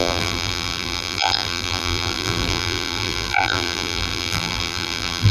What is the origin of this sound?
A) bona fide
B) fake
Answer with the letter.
B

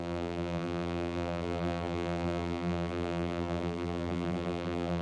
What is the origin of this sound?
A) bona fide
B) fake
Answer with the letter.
B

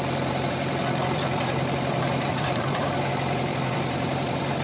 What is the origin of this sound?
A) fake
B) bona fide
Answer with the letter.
A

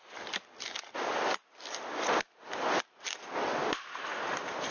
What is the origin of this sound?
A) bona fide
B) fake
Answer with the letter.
A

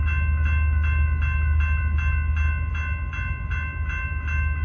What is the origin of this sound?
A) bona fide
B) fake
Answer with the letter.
A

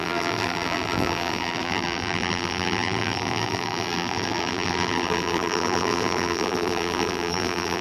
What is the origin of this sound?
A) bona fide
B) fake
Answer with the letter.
B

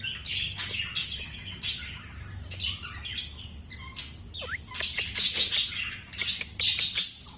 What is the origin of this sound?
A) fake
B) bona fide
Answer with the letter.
B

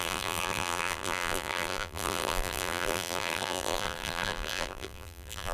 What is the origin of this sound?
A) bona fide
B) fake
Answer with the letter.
B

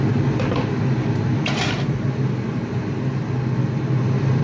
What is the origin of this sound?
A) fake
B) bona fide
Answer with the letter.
B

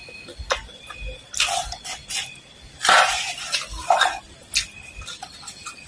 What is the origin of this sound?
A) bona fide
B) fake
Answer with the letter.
A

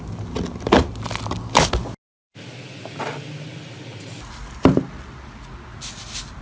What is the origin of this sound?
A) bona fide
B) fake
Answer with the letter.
A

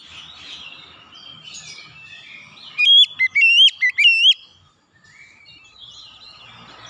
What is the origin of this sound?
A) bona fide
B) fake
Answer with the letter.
A